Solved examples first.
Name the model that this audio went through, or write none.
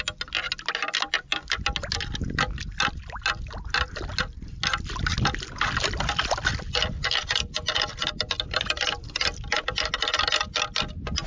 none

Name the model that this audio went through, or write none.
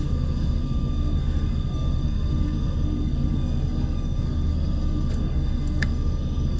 codec, SNAC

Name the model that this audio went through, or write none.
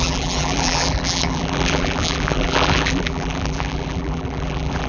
vocoder, BigVGAN v2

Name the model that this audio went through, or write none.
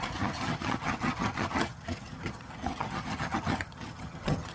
vocoder, HiFi-GAN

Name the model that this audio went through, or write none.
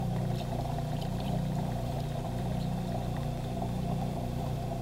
vocoder, BigVGAN v2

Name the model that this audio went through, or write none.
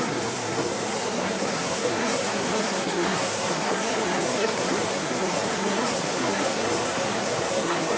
codec, SNAC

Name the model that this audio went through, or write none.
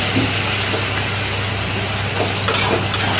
none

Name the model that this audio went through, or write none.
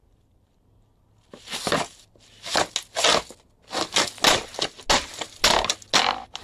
none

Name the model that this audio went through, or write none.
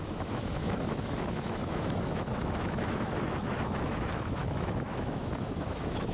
autoencoder, DAC-VAE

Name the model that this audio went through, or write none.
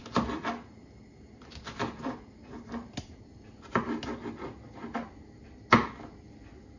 none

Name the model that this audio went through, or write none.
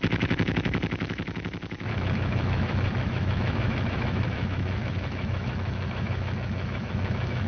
autoencoder, DAC-VAE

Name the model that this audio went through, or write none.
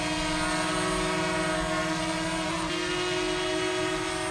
none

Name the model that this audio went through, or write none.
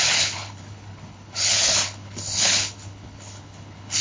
codec, HILCodec